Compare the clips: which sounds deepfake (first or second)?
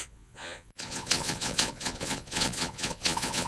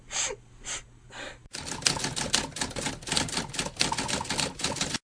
first